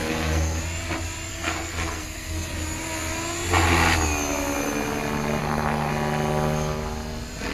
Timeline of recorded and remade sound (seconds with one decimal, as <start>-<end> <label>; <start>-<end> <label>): 0.0-0.6 remade; 0.6-1.3 recorded; 1.3-2.5 remade; 2.5-5.4 recorded; 5.4-5.9 remade; 5.9-7.5 recorded

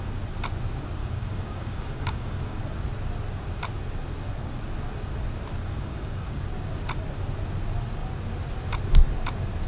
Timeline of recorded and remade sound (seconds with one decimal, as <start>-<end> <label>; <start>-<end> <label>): 0.0-1.0 recorded; 1.0-2.6 remade; 2.6-5.6 recorded; 5.6-6.4 remade; 6.4-9.7 recorded

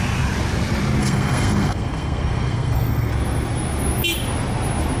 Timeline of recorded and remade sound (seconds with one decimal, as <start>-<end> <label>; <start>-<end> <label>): 0.0-1.0 recorded; 1.0-3.1 remade; 3.1-5.0 recorded

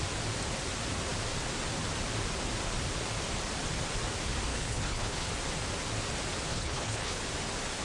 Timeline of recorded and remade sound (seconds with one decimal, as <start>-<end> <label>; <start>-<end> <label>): 0.0-4.5 recorded; 4.5-5.3 remade; 5.3-6.5 recorded; 6.5-7.2 remade; 7.2-7.8 recorded

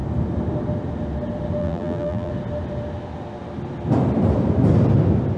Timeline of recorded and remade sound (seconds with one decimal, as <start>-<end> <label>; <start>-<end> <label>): 0.0-1.6 recorded; 1.6-2.3 remade; 2.3-5.4 recorded

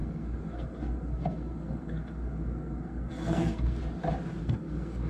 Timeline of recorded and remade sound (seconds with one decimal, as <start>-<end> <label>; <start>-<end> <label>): 0.0-3.8 remade; 3.8-4.4 recorded; 4.4-5.1 remade

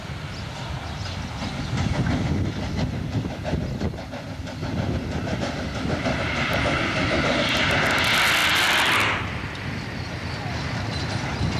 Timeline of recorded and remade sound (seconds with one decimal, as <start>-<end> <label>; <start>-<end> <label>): 0.0-11.6 recorded

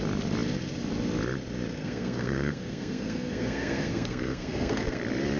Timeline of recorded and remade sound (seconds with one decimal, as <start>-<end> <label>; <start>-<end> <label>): 0.0-1.8 recorded; 1.8-5.0 remade; 5.0-5.4 recorded